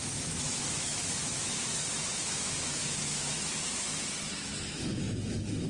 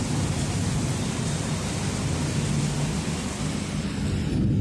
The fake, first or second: first